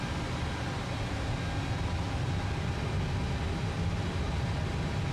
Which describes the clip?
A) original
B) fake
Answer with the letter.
A